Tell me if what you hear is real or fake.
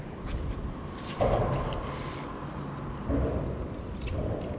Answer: real